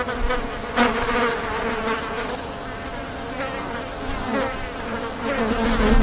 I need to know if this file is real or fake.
real